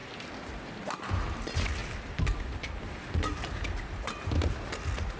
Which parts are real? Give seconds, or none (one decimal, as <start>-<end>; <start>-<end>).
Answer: 0.0-1.8; 4.7-5.2